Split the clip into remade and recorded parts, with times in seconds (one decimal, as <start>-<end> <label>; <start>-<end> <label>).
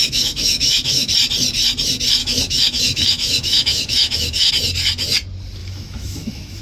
0.0-1.1 remade; 1.1-2.2 recorded; 2.2-4.5 remade; 4.5-5.6 recorded; 5.6-6.6 remade